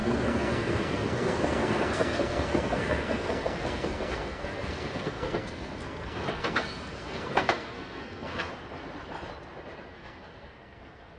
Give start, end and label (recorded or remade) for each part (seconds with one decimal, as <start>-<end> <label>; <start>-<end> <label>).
0.0-8.5 remade; 8.5-9.9 recorded; 9.9-11.2 remade